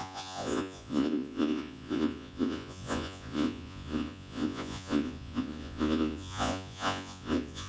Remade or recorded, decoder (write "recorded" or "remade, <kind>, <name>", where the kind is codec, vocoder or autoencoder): remade, vocoder, Vocos